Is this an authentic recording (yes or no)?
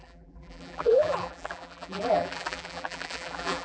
no